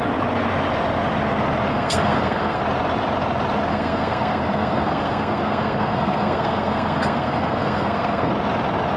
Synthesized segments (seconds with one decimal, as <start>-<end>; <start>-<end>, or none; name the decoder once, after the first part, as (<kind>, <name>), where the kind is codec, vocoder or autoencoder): 1.7-2.6 (codec, SNAC); 3.7-8.3